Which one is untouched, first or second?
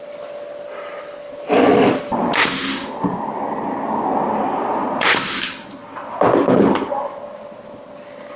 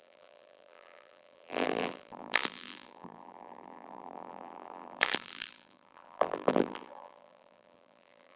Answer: first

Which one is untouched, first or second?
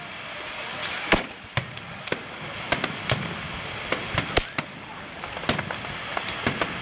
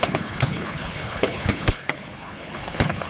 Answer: first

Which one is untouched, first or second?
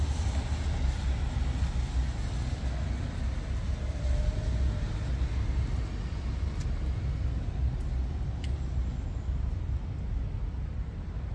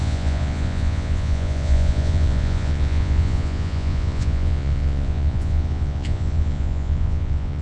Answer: first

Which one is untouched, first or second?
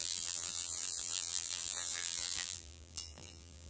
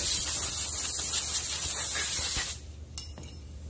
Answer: second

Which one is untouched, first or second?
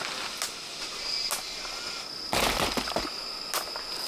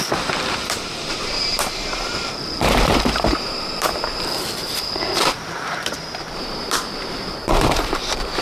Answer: first